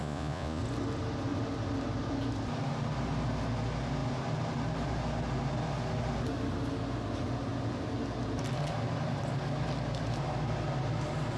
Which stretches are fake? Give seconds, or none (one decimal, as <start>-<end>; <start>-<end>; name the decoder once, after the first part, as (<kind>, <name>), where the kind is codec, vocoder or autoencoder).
0.0-0.6 (vocoder, Vocos)